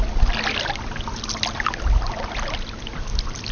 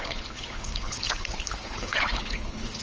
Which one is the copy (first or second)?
second